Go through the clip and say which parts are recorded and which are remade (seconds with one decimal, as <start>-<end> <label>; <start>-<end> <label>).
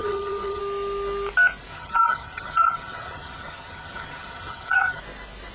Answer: 0.0-0.6 remade; 0.6-1.7 recorded; 1.7-5.0 remade; 5.0-5.5 recorded